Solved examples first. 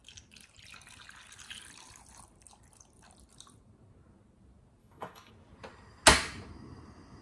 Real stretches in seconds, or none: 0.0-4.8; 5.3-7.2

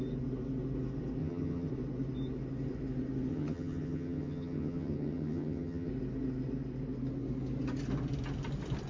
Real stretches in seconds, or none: 0.0-1.2; 1.7-3.3; 5.9-8.9

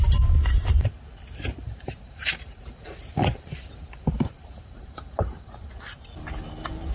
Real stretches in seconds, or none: 0.0-1.6; 5.7-6.9

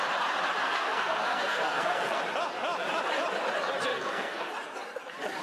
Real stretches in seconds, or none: 0.0-0.6; 2.2-3.9; 4.5-5.4